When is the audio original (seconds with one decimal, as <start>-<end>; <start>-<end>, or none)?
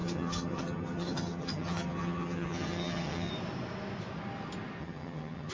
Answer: 3.3-4.8